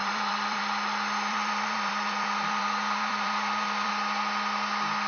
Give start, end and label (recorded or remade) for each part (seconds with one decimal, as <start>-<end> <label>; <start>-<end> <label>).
0.0-0.6 remade; 0.6-1.3 recorded; 1.3-3.9 remade; 3.9-5.1 recorded